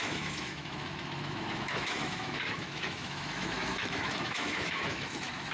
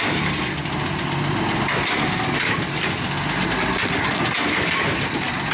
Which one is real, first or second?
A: second